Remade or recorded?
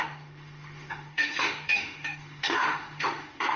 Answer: remade